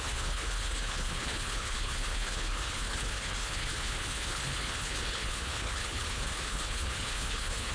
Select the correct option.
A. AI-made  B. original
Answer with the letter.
A